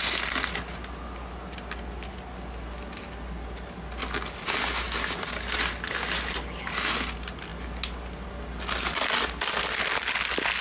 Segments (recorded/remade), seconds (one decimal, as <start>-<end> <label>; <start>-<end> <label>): 0.0-10.6 recorded